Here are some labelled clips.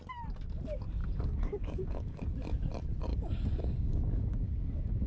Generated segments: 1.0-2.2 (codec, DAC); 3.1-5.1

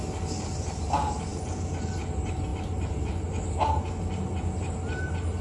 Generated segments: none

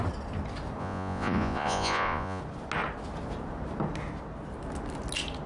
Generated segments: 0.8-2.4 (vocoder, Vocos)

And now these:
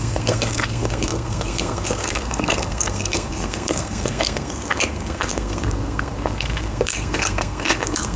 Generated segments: 0.0-8.2 (codec, SNAC)